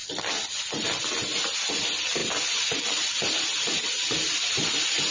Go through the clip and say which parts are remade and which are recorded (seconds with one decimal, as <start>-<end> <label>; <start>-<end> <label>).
0.0-5.1 recorded